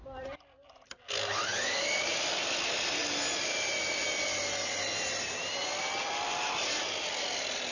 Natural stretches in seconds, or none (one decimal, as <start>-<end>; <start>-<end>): 0.0-7.7